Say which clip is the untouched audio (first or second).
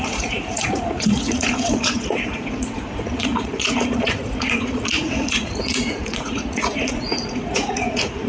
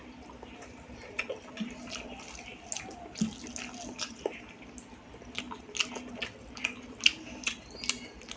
second